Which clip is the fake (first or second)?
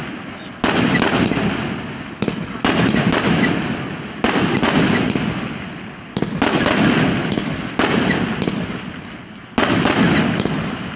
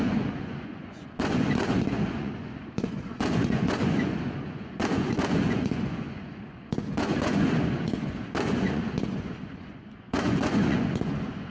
second